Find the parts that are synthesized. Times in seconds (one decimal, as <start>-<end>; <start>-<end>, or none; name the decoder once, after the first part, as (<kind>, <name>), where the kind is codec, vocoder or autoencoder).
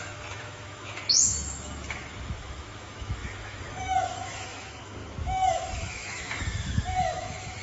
0.0-7.6 (autoencoder, DAC-VAE)